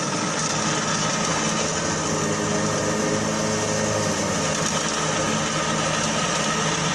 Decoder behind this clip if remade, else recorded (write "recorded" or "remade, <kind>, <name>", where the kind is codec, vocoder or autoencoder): recorded